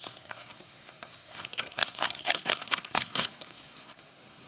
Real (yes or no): no